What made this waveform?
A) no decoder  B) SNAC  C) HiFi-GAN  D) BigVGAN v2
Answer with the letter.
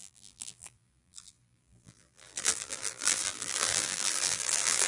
D